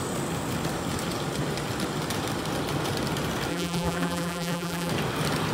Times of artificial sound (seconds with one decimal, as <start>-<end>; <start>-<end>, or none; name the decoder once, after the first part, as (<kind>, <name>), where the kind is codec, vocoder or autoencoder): 3.5-4.9 (vocoder, BigVGAN v2)